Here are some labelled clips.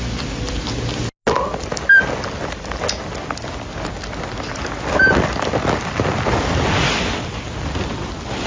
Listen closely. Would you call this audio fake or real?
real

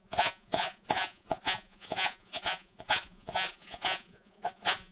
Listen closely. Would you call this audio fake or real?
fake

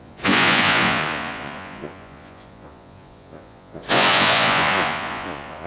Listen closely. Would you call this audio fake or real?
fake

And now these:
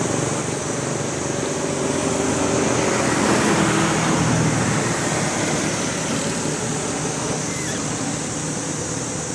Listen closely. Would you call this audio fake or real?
real